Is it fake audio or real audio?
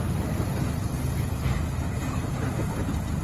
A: real